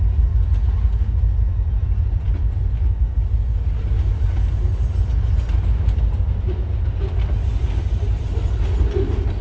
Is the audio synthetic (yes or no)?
no